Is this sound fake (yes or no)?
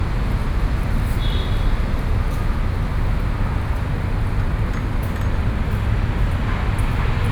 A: no